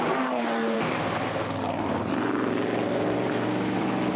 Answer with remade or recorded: remade